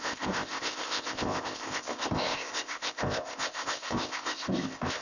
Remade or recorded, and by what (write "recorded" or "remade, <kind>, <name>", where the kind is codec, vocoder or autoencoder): remade, codec, ZipCodec